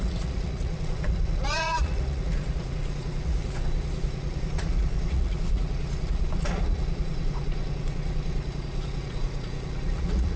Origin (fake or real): fake